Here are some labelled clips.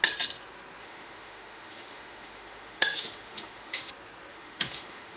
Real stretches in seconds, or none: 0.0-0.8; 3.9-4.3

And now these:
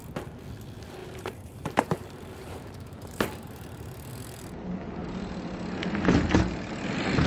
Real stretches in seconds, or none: 0.0-1.0; 4.1-7.3

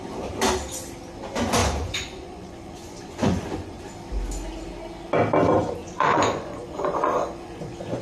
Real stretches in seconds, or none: 0.0-1.6; 3.8-5.8

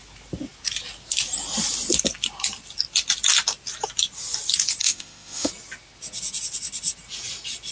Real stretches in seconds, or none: 0.0-4.8; 5.5-7.7

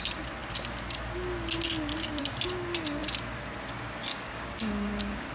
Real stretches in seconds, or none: 0.0-4.1

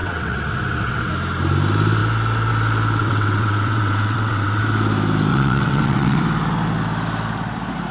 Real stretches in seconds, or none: 1.1-3.0; 4.6-5.3; 6.2-7.9